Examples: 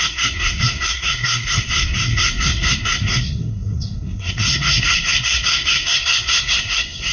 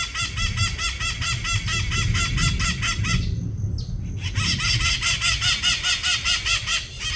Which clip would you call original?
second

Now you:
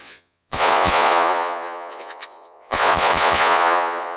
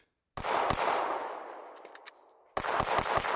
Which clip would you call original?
second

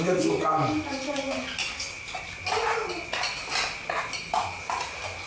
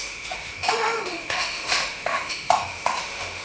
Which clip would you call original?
first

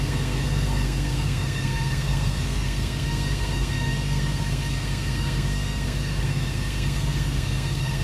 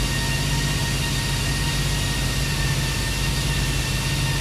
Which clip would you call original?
second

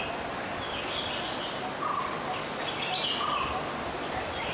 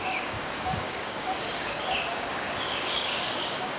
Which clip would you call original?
first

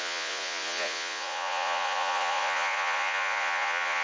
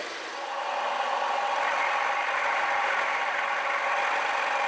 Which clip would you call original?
second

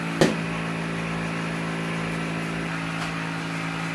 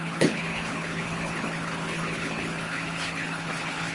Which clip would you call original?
first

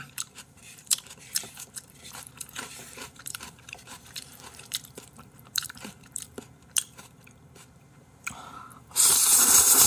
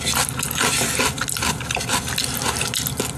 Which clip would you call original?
second